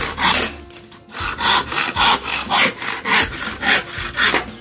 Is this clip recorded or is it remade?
recorded